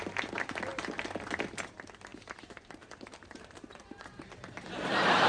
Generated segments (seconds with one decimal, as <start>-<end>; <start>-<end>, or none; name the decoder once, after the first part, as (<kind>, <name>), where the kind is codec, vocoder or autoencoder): 2.1-5.3 (vocoder, BigVGAN v2)